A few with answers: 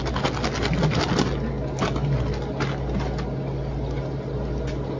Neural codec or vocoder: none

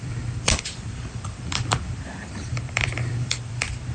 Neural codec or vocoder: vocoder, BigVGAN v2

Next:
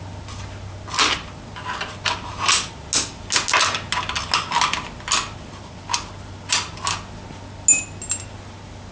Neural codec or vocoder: none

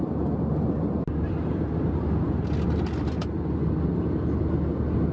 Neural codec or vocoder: none